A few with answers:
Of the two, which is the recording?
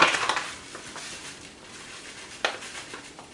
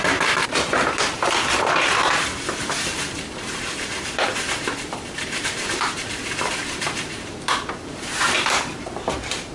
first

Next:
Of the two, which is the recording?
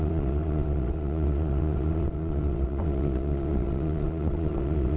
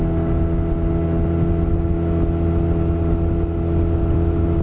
second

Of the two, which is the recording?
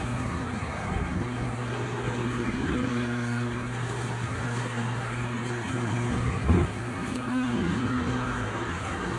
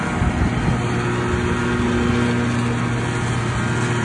second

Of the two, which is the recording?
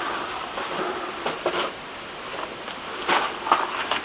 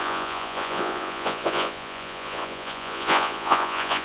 first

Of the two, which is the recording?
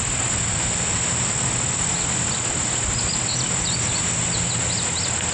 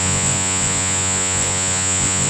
first